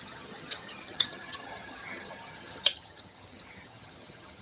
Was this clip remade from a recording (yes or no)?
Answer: yes